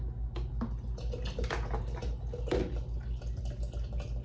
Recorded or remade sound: recorded